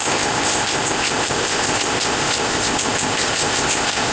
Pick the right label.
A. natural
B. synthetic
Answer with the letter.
B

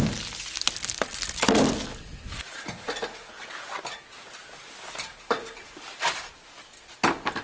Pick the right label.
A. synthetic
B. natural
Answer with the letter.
B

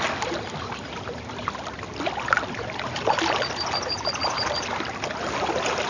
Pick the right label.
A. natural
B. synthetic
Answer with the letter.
A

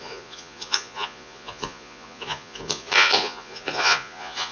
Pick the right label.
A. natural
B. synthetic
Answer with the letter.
B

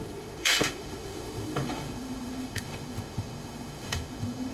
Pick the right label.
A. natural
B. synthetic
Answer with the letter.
B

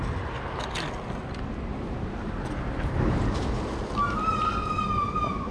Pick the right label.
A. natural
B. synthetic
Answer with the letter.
A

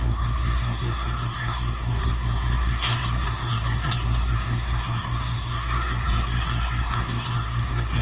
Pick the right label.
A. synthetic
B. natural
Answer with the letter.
A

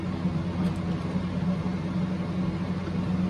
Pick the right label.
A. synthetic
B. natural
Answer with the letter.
B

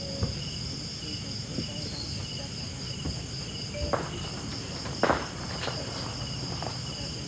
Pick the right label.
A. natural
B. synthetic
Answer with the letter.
A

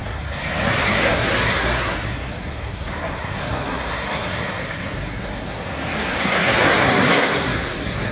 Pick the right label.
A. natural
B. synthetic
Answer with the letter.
B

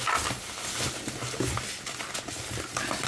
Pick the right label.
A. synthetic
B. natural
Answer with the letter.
B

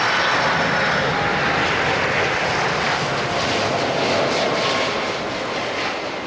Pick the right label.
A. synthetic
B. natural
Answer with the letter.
B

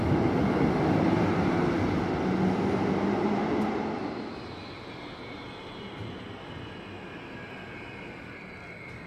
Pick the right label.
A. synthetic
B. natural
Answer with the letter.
B